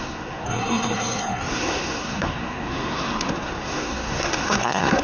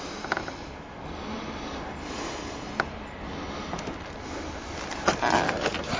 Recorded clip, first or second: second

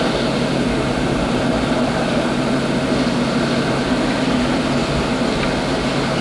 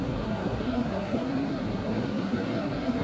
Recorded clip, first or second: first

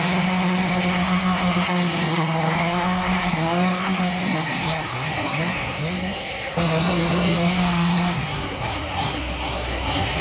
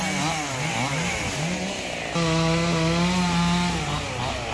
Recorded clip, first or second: second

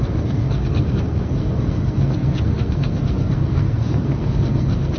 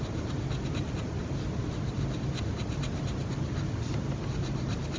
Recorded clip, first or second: second